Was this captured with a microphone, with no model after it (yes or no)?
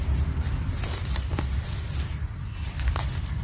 no